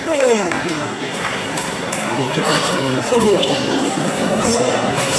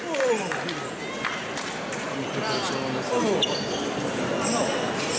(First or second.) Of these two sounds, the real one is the second